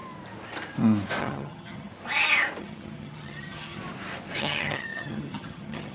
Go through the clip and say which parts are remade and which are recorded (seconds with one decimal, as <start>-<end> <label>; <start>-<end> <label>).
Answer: 0.0-1.2 recorded; 1.2-1.9 remade; 1.9-2.6 recorded; 2.6-3.8 remade; 3.8-4.4 recorded; 4.4-5.9 remade